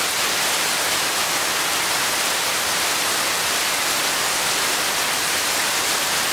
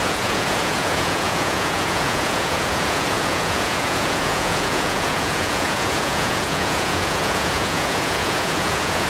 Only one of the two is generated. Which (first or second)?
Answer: second